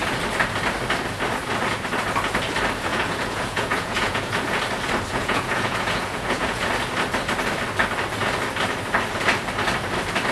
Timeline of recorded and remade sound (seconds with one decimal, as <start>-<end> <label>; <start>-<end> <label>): 0.0-2.9 recorded; 2.9-4.6 remade; 4.6-5.1 recorded; 5.1-6.7 remade; 6.7-10.3 recorded